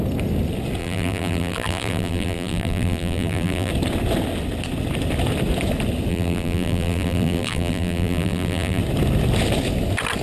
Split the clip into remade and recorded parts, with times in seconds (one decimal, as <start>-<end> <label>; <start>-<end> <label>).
0.0-0.8 recorded; 0.8-3.7 remade; 3.7-6.1 recorded; 6.1-8.8 remade; 8.8-10.2 recorded